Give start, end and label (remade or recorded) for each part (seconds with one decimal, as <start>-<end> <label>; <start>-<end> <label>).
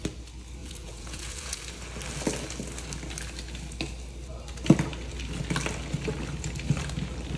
0.0-0.6 recorded; 0.6-1.6 remade; 1.6-7.4 recorded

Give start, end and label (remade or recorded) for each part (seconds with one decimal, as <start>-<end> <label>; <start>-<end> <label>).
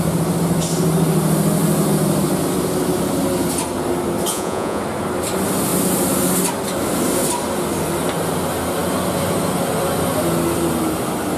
0.0-4.3 recorded; 4.3-4.8 remade; 4.8-11.4 recorded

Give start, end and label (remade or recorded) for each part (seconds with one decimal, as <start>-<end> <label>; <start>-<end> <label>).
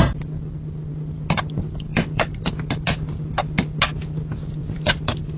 0.0-1.9 recorded; 1.9-2.5 remade; 2.5-4.6 recorded; 4.6-5.4 remade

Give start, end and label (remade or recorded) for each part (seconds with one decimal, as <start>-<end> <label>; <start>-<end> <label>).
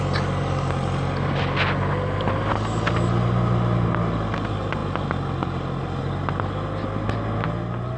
0.0-8.0 recorded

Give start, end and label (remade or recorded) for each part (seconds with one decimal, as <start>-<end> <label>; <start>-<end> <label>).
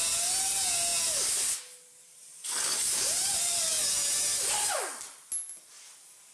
0.0-6.3 recorded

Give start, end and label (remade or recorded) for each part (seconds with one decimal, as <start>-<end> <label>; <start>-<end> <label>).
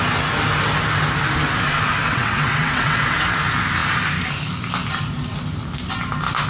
0.0-2.0 recorded; 2.0-3.0 remade; 3.0-6.5 recorded